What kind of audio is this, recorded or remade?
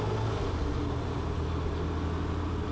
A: recorded